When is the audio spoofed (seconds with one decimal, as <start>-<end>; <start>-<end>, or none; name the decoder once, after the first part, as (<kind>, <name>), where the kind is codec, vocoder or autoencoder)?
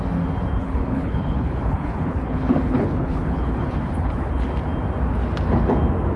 0.6-4.3 (codec, HILCodec)